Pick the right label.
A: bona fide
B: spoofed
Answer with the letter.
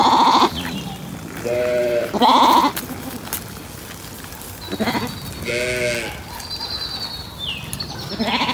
A